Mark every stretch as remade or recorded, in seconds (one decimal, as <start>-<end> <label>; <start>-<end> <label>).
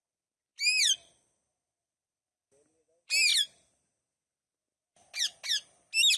0.0-6.2 recorded